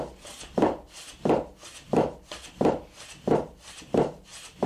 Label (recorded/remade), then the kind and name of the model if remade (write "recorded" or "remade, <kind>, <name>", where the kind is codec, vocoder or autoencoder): recorded